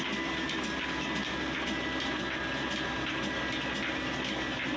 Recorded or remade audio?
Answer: recorded